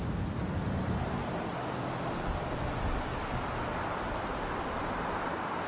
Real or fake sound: real